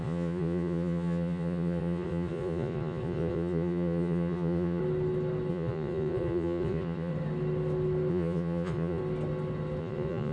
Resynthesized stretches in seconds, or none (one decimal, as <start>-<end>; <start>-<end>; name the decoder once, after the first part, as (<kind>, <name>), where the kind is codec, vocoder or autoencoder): 0.0-4.8 (vocoder, Vocos); 5.5-7.1; 8.1-9.0; 9.8-10.3